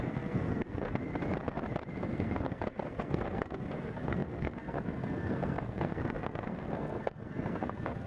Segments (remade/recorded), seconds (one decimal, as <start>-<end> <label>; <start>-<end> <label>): 0.0-1.0 remade; 1.0-2.0 recorded; 2.0-8.1 remade